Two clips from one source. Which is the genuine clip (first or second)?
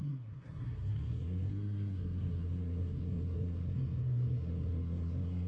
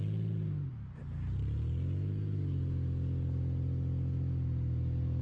second